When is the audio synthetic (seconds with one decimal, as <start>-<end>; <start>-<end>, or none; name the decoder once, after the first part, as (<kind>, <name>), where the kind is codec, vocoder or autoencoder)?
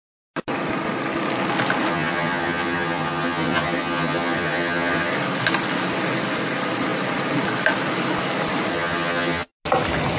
1.9-5.1 (vocoder, HiFi-GAN); 8.7-9.5